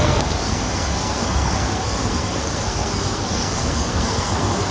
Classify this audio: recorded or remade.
remade